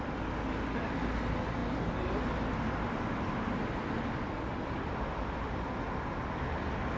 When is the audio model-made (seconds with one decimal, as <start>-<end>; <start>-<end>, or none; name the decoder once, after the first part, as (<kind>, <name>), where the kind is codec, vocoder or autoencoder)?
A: none